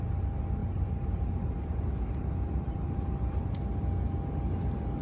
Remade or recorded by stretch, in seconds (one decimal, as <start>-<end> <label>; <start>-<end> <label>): 0.0-0.6 recorded; 0.6-3.5 remade; 3.5-5.0 recorded